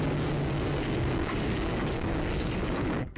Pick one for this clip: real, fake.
fake